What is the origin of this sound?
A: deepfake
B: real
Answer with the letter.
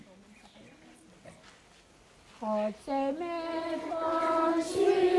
B